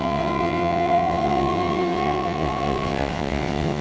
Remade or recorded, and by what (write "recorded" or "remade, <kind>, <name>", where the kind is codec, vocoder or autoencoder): remade, vocoder, WaveNeXt